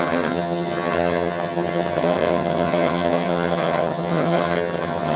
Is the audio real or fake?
fake